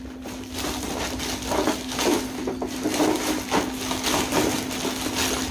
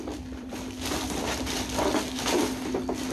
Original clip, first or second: first